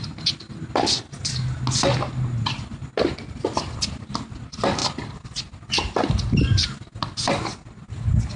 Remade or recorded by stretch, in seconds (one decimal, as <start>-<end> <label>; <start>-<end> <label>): 0.0-8.4 recorded